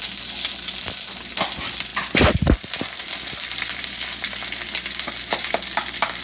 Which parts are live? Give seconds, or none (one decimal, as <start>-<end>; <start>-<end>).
0.0-1.9; 5.5-6.2